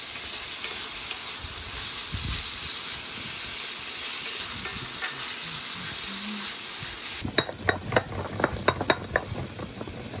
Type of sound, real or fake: real